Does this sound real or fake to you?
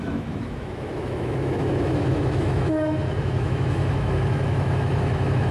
fake